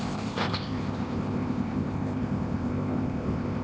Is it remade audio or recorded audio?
remade